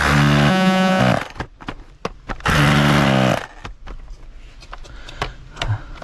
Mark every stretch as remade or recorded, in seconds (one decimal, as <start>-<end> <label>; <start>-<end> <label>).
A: 0.0-0.5 recorded; 0.5-1.0 remade; 1.0-6.0 recorded